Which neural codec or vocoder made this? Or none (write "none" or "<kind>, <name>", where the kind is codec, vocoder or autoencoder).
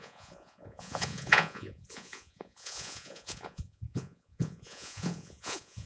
vocoder, Vocos